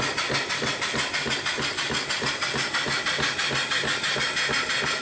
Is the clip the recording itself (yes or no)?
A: yes